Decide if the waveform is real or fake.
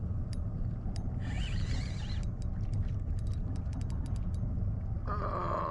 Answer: real